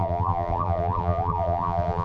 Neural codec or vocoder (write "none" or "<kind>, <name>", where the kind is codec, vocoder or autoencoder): vocoder, BigVGAN v2